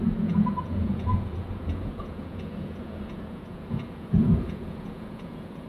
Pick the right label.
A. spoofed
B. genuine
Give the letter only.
A